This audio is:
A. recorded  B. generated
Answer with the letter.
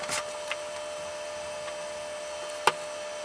A